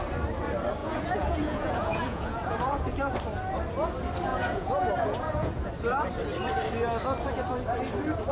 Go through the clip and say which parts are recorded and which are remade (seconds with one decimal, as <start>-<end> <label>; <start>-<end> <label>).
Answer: 0.0-0.8 recorded; 0.8-2.9 remade; 2.9-4.3 recorded; 4.3-5.7 remade; 5.7-8.3 recorded